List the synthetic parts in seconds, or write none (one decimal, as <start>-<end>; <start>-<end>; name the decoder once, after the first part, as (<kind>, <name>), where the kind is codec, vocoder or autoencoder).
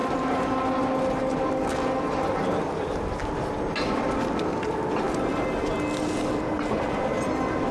none